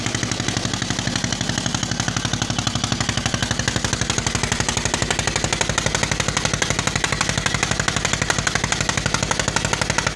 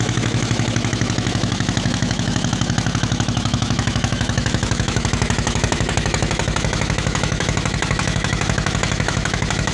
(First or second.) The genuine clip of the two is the first